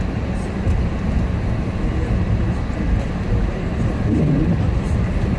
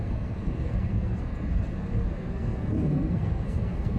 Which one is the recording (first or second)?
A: first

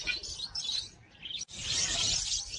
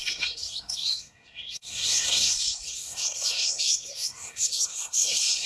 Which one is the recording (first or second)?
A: first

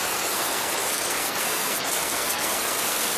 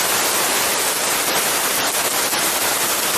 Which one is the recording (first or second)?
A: second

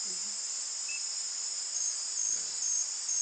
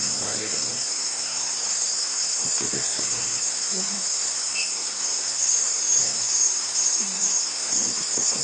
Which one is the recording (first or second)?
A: first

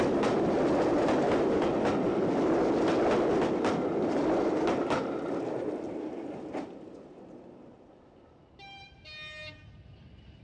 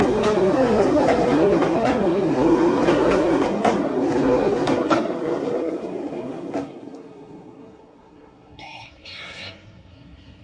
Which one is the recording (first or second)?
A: first